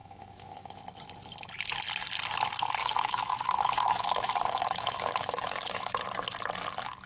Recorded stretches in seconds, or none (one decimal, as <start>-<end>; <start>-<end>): 0.8-2.8; 6.0-7.1